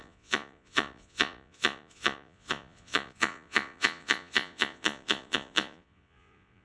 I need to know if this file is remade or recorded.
remade